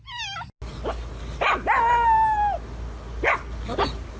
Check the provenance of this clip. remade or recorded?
recorded